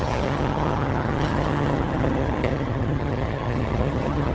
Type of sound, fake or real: fake